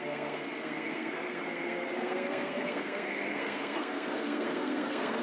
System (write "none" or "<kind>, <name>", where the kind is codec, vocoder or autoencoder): codec, SNAC